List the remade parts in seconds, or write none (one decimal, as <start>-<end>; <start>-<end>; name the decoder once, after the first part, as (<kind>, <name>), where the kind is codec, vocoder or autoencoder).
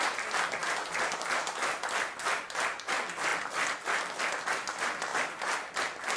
none